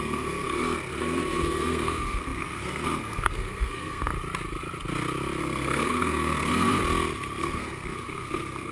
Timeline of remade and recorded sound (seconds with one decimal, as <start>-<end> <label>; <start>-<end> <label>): 0.0-4.1 remade; 4.1-5.4 recorded; 5.4-6.8 remade; 6.8-7.4 recorded; 7.4-8.7 remade